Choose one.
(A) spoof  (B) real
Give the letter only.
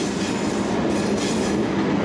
B